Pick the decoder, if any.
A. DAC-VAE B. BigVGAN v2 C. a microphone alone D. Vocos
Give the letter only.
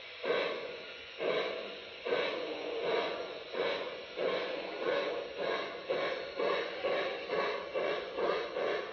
D